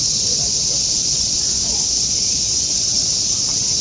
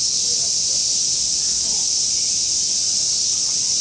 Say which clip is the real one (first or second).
second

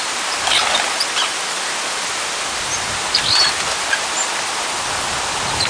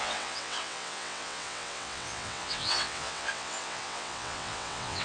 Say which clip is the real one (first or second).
first